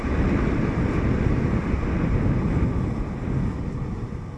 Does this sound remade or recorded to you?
recorded